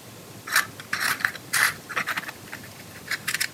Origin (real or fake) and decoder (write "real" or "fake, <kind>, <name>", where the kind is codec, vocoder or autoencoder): fake, vocoder, BigVGAN v2